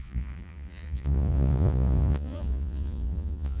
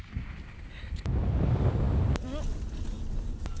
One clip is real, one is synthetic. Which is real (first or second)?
second